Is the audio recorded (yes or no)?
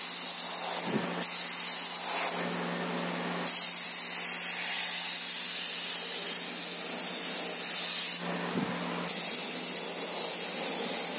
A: yes